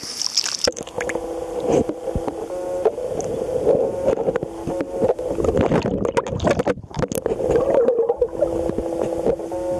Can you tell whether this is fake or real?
real